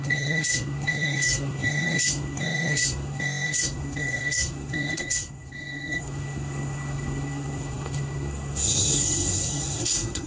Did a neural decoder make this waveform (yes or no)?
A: yes